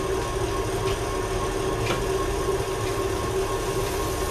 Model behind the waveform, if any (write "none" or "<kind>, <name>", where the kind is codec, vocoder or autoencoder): none